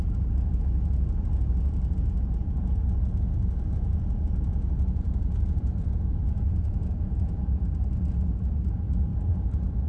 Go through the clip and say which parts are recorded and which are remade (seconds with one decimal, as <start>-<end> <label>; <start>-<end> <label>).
0.0-2.4 recorded; 2.4-7.6 remade; 7.6-9.1 recorded; 9.1-9.9 remade